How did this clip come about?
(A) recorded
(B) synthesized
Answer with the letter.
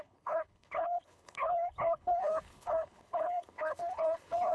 B